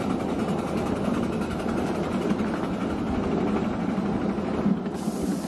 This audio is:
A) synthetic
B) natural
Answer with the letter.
B